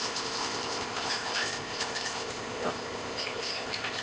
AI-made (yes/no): yes